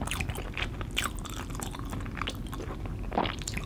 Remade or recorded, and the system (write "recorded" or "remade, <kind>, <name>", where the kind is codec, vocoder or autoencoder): recorded